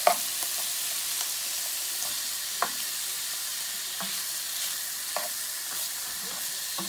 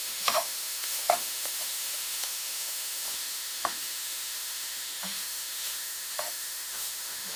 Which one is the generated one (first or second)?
second